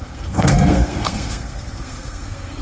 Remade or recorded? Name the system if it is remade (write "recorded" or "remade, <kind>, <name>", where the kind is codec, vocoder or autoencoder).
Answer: remade, codec, SNAC